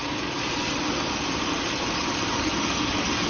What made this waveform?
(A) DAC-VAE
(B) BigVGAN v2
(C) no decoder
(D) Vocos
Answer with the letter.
C